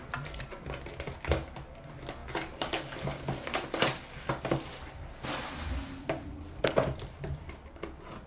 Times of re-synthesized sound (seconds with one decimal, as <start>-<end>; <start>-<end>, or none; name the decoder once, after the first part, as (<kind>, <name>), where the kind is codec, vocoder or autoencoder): none